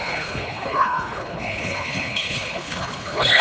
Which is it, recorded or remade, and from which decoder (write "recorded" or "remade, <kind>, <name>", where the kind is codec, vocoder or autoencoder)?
remade, codec, HILCodec